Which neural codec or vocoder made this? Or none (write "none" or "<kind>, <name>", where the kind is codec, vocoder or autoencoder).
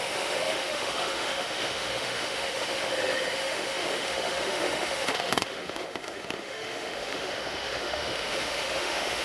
autoencoder, DAC-VAE